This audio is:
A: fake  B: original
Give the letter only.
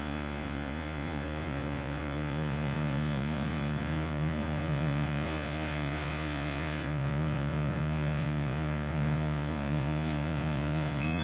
A